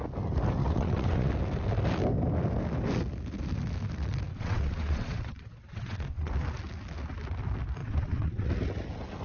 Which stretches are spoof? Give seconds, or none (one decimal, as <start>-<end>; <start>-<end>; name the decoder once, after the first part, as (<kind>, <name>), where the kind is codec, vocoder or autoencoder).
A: 0.6-1.3 (vocoder, WaveNeXt); 4.3-6.3; 7.8-8.5